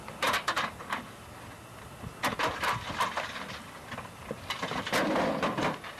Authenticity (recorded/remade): recorded